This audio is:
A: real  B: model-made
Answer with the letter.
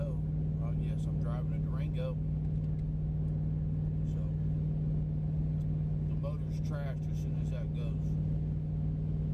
A